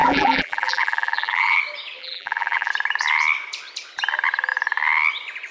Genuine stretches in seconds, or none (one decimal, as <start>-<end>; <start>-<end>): 1.6-2.0; 2.7-5.5